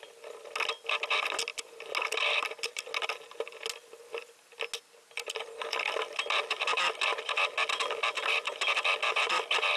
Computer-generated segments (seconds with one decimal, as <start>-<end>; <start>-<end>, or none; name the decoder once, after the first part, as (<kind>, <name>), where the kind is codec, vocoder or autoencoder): none